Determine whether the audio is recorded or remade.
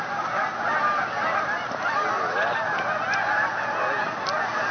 recorded